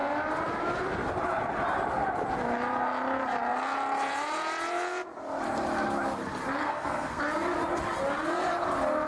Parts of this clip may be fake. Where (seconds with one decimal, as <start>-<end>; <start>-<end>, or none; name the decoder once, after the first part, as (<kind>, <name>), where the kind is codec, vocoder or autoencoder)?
6.6-7.2 (codec, SNAC)